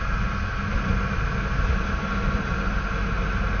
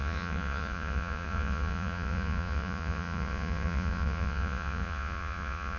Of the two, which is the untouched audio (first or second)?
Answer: first